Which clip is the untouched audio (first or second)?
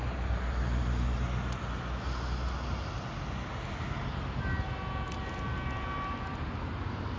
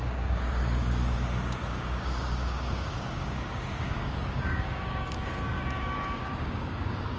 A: first